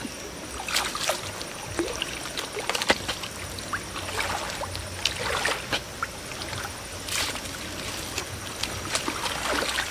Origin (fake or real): real